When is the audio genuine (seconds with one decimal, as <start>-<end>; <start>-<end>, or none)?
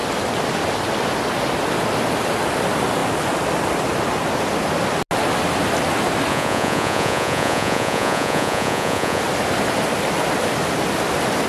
0.0-6.3; 9.2-11.5